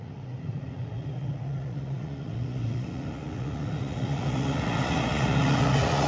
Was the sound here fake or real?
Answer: fake